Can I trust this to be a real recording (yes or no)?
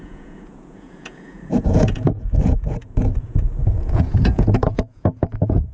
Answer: no